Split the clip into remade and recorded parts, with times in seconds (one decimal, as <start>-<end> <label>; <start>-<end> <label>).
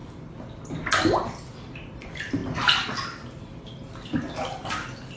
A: 0.0-5.2 recorded